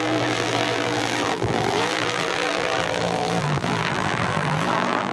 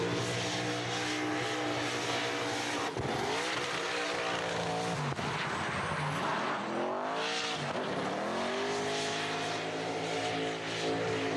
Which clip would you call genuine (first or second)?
second